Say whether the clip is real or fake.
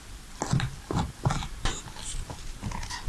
real